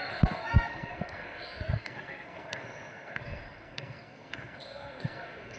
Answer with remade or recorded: remade